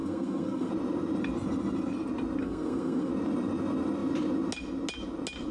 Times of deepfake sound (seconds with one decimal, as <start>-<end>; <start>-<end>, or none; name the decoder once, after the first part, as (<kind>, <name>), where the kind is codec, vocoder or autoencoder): 0.0-0.7 (codec, SNAC); 2.4-3.1